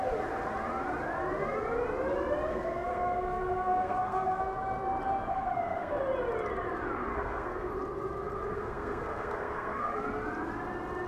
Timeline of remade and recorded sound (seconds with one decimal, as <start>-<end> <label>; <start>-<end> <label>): 0.0-2.5 recorded; 2.5-4.4 remade; 4.4-5.3 recorded; 5.3-6.0 remade; 6.0-7.1 recorded; 7.1-7.7 remade; 7.7-8.5 recorded; 8.5-10.0 remade; 10.0-11.1 recorded

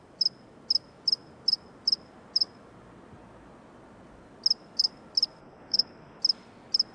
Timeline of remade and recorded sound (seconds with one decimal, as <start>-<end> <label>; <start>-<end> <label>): 0.0-5.4 recorded; 5.4-6.2 remade; 6.2-6.9 recorded